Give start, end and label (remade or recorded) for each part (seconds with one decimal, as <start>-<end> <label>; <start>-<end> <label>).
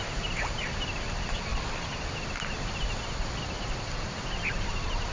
0.0-5.1 recorded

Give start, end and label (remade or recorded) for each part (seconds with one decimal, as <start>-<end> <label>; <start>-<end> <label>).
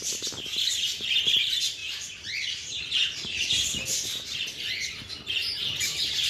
0.0-6.3 recorded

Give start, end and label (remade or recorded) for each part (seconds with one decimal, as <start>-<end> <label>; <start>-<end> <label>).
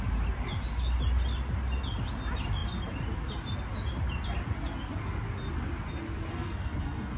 0.0-6.3 recorded; 6.3-7.2 remade